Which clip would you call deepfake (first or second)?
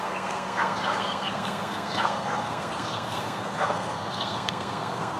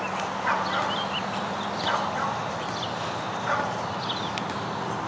first